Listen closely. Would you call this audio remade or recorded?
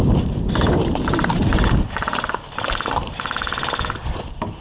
recorded